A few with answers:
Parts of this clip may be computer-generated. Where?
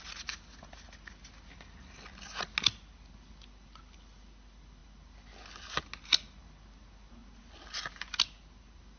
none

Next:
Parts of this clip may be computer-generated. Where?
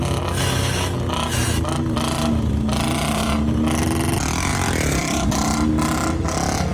4.5-5.3 (vocoder, BigVGAN v2)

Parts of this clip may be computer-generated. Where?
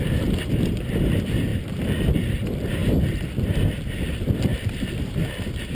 1.5-2.1 (vocoder, BigVGAN v2); 4.5-5.2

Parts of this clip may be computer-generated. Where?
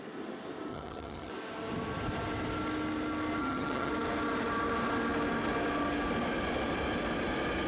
0.7-1.3 (vocoder, HiFi-GAN); 3.4-3.9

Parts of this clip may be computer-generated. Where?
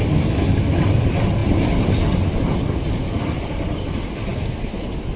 none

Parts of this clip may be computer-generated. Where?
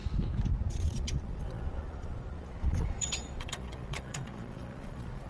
0.7-5.3 (vocoder, Vocos)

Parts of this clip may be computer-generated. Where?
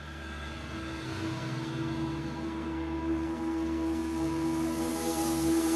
0.0-5.8 (codec, SNAC)